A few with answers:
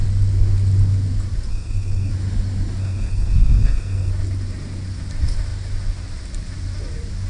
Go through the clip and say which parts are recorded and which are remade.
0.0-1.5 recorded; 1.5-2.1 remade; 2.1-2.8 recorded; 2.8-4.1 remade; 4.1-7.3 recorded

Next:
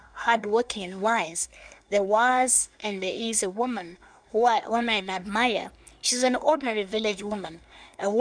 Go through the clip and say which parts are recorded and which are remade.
0.0-5.2 remade; 5.2-6.1 recorded; 6.1-8.2 remade

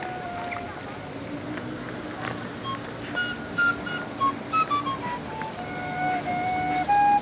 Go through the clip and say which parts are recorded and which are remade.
0.0-7.2 recorded

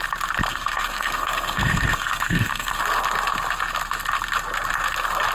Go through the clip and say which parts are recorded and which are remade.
0.0-0.5 recorded; 0.5-2.8 remade; 2.8-5.3 recorded

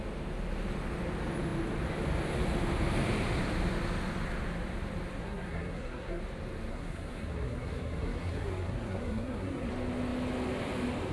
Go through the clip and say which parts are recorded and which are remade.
0.0-5.2 recorded; 5.2-6.2 remade; 6.2-6.7 recorded; 6.7-9.7 remade; 9.7-11.1 recorded

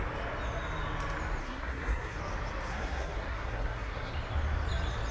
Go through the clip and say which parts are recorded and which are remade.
0.0-1.4 recorded; 1.4-2.2 remade; 2.2-2.7 recorded; 2.7-4.1 remade; 4.1-5.1 recorded

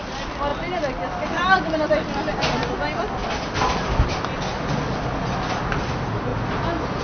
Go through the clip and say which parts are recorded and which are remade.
0.0-7.0 recorded